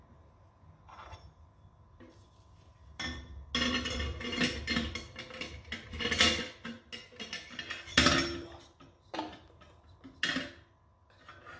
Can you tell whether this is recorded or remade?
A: recorded